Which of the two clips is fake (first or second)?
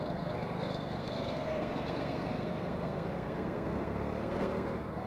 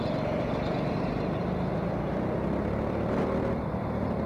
first